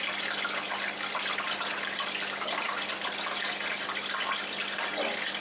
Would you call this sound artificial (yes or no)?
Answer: no